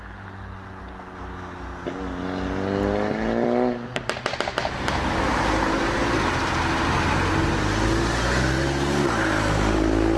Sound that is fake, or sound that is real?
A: real